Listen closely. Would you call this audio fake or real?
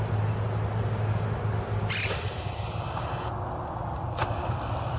real